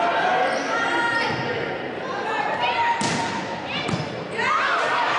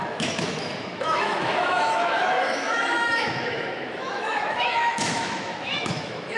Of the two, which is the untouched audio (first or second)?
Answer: first